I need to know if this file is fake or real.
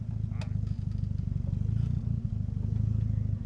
real